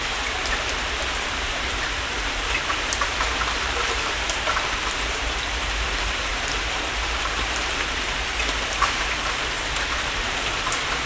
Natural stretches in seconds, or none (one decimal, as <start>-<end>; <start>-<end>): none